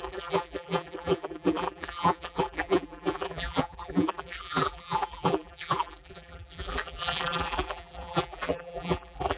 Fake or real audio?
fake